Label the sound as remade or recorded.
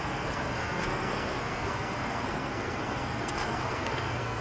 remade